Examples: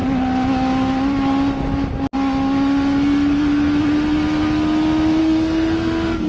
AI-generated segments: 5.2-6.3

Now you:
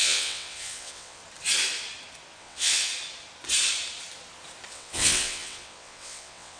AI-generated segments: 0.0-1.2; 2.4-2.9; 4.7-6.6

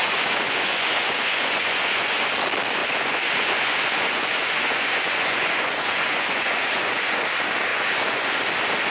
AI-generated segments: 0.0-2.3; 2.8-7.2; 7.7-8.4